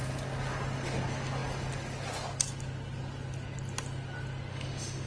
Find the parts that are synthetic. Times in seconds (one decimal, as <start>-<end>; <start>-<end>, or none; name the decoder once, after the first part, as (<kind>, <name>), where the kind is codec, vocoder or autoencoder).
4.5-5.1 (autoencoder, DAC-VAE)